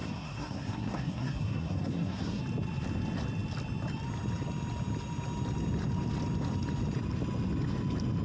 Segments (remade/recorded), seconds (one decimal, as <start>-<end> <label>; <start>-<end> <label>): 0.0-2.4 remade; 2.4-8.2 recorded